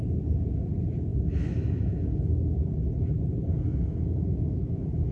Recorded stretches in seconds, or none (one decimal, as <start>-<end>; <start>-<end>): 0.0-1.1; 2.6-3.7